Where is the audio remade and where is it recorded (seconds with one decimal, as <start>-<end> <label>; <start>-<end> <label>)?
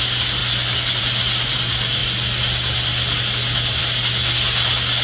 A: 0.0-5.0 recorded